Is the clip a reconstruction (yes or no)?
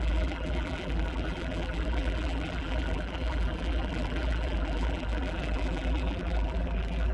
yes